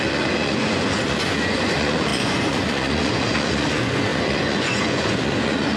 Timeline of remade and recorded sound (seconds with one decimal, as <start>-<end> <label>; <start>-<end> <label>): 0.0-5.8 remade